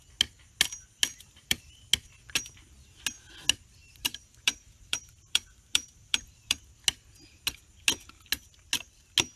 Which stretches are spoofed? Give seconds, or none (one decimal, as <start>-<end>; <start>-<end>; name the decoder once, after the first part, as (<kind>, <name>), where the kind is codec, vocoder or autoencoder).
1.1-1.8 (vocoder, BigVGAN v2); 3.8-6.6